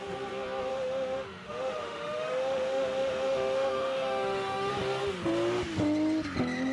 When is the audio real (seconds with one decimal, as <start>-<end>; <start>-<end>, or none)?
0.0-0.7; 4.7-6.7